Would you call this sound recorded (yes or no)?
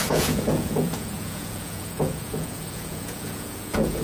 no